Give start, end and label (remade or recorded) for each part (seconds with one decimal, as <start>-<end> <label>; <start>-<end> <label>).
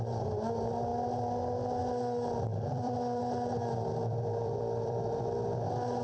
0.0-2.5 recorded; 2.5-3.2 remade; 3.2-4.0 recorded; 4.0-5.2 remade; 5.2-6.0 recorded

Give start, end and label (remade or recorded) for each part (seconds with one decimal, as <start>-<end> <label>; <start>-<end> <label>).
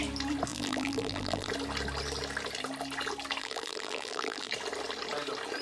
0.0-0.5 recorded; 0.5-1.5 remade; 1.5-3.4 recorded; 3.4-4.5 remade; 4.5-5.6 recorded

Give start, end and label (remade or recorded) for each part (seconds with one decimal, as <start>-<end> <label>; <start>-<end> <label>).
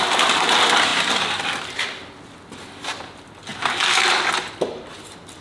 0.0-5.4 recorded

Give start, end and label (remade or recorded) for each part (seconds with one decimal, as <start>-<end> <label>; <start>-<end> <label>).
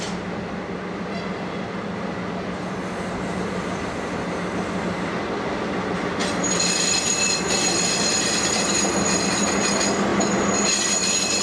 0.0-6.2 recorded; 6.2-8.7 remade; 8.7-11.4 recorded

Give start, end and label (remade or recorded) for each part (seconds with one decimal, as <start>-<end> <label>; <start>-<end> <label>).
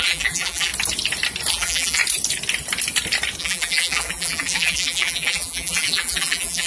0.0-0.7 remade; 0.7-1.5 recorded; 1.5-2.0 remade; 2.0-3.4 recorded; 3.4-6.7 remade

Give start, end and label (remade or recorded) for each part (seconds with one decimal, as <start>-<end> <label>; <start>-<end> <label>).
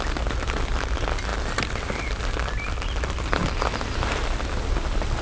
0.0-5.2 recorded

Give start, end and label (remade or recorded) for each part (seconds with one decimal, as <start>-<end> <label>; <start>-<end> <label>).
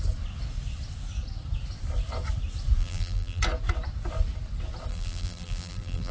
0.0-2.8 recorded; 2.8-3.4 remade; 3.4-4.9 recorded; 4.9-6.1 remade